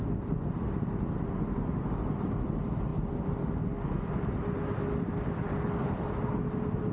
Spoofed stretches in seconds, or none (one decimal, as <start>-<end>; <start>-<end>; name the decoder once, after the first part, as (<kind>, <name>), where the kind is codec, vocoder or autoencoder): none